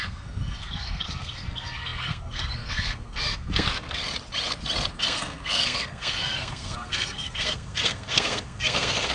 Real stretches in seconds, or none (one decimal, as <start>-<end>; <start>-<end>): 4.0-4.9